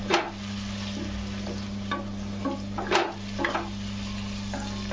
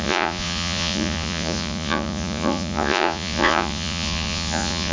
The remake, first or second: second